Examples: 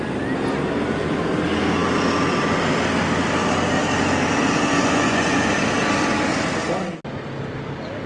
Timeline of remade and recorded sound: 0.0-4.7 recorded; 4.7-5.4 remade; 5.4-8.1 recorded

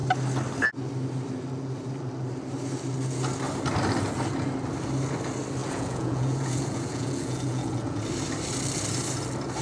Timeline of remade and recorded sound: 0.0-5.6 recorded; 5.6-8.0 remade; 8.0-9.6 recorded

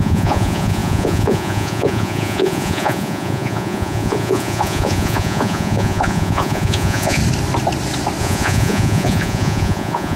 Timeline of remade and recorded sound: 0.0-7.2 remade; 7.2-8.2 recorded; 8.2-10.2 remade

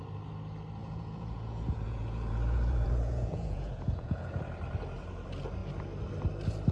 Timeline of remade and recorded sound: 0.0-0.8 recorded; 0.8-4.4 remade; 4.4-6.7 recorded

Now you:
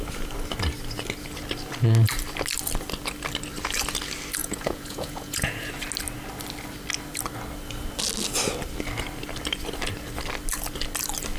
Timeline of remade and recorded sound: 0.0-4.4 recorded; 4.4-5.7 remade; 5.7-11.4 recorded

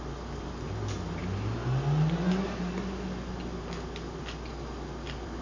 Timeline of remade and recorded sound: 0.0-5.4 recorded

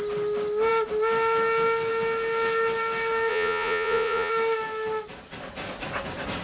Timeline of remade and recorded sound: 0.0-3.3 recorded; 3.3-4.3 remade; 4.3-6.4 recorded

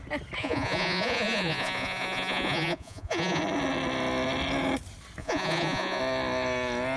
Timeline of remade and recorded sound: 0.0-0.4 recorded; 0.4-3.4 remade; 3.4-5.2 recorded; 5.2-6.0 remade; 6.0-7.0 recorded